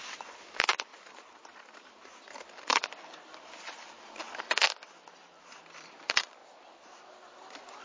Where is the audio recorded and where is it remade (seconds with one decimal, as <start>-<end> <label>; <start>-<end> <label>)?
0.0-0.9 recorded; 0.9-4.3 remade; 4.3-6.4 recorded; 6.4-7.8 remade